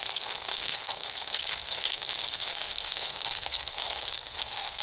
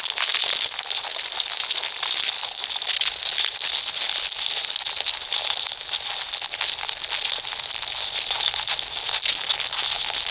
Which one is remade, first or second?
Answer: first